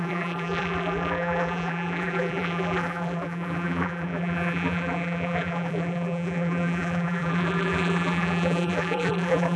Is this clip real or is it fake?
fake